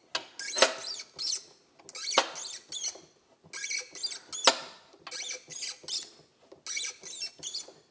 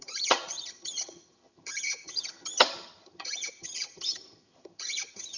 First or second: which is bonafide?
first